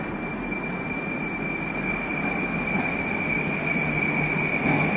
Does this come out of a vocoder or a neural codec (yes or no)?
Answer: no